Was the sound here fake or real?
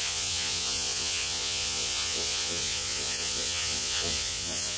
fake